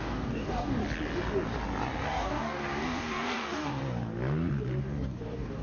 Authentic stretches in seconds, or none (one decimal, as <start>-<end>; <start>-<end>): 0.8-2.0; 3.8-4.8